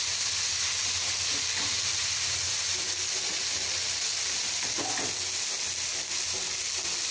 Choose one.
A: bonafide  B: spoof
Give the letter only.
A